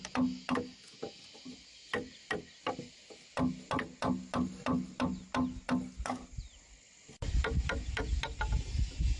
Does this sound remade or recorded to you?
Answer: recorded